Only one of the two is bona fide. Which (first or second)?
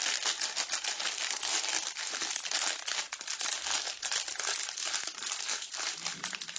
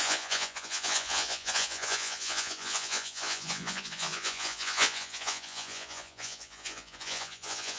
first